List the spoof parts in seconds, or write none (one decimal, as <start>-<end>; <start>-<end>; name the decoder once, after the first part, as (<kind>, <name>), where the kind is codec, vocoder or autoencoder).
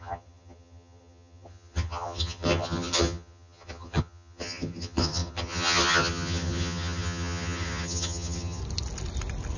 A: 0.0-8.6 (vocoder, HiFi-GAN)